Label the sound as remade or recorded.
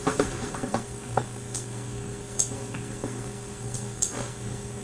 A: remade